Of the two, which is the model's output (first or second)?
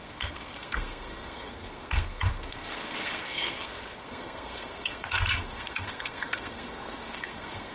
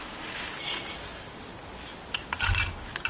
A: first